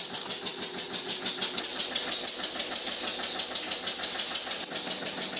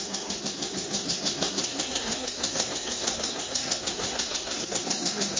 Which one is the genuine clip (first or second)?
first